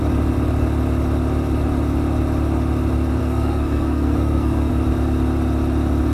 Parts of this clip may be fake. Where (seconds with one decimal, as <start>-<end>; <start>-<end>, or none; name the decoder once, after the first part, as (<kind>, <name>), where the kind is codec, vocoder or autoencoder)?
3.2-4.7 (codec, SNAC)